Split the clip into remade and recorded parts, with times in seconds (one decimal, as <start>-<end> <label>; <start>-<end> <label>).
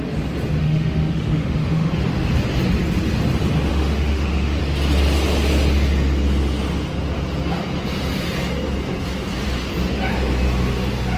0.0-0.6 recorded; 0.6-1.9 remade; 1.9-3.7 recorded; 3.7-4.6 remade; 4.6-11.2 recorded